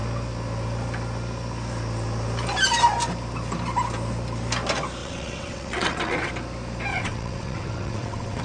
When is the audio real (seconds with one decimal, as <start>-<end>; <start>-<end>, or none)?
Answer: 0.0-5.0; 6.3-6.9